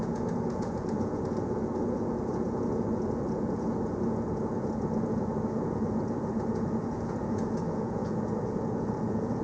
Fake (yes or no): yes